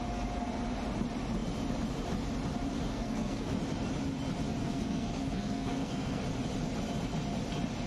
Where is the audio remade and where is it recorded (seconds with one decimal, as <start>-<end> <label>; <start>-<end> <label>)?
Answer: 0.0-2.9 recorded; 2.9-3.6 remade; 3.6-4.6 recorded; 4.6-6.2 remade; 6.2-7.9 recorded